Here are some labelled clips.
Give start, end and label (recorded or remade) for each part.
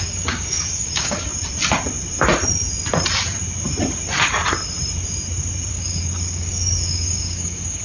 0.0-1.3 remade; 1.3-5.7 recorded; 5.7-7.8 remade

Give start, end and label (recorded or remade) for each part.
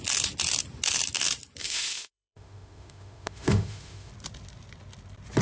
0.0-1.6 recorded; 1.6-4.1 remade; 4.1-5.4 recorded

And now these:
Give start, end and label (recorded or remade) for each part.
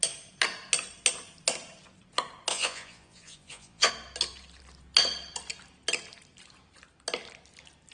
0.0-2.5 recorded; 2.5-3.9 remade; 3.9-7.9 recorded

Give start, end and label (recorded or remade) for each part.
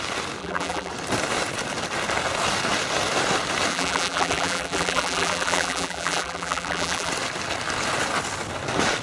0.0-0.4 recorded; 0.4-0.9 remade; 0.9-3.7 recorded; 3.7-7.1 remade; 7.1-9.0 recorded